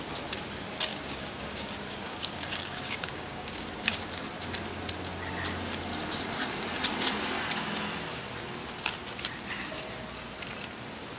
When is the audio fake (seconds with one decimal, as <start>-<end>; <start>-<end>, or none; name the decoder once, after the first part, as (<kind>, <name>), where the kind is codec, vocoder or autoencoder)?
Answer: 0.9-4.0 (codec, DAC)